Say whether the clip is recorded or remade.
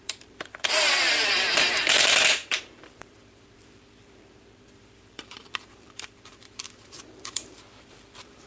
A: remade